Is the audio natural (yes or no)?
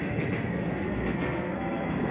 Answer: no